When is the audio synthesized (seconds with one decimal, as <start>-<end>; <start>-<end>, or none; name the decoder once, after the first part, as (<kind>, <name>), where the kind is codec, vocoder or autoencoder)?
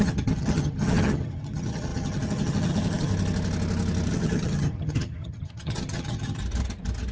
0.0-3.1 (vocoder, HiFi-GAN); 4.1-6.4